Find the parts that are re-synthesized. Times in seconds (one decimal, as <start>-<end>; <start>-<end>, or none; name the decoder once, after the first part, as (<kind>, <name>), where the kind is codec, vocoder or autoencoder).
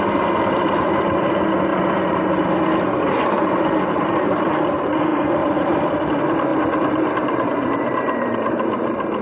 1.7-2.5 (vocoder, BigVGAN v2); 5.1-5.8; 6.5-9.2